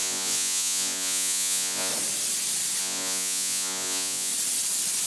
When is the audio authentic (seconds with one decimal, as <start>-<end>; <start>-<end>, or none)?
1.9-2.8; 4.3-5.1